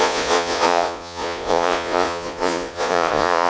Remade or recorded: remade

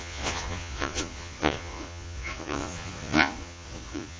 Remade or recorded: remade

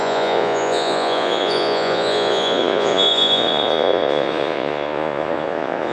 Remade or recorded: remade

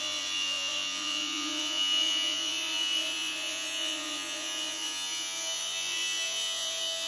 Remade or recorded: remade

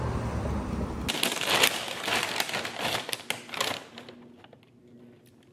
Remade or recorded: recorded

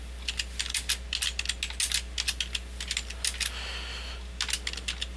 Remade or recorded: recorded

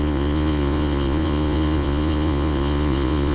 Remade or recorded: remade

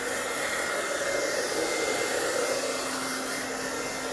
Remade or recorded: recorded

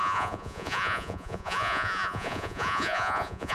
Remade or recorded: remade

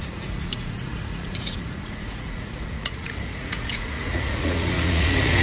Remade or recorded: remade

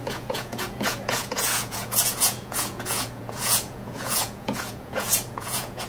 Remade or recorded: remade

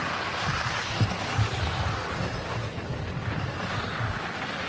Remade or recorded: recorded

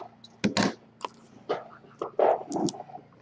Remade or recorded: recorded